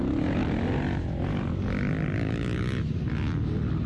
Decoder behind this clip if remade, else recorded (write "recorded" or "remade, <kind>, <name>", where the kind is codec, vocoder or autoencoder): recorded